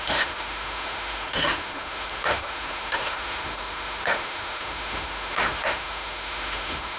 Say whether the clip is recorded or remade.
remade